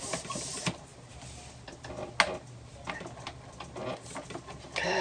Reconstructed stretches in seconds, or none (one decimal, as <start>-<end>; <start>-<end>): none